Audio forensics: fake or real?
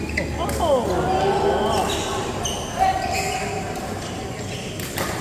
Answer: real